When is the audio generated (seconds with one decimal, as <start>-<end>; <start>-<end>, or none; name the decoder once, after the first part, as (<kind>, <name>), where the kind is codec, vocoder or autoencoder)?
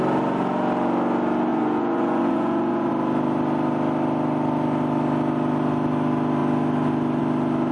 1.5-2.9 (vocoder, Vocos)